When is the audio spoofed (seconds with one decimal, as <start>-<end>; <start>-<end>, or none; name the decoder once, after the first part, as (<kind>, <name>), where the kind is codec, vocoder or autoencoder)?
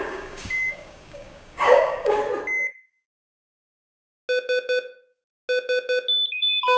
0.0-2.2 (codec, DAC); 6.3-6.8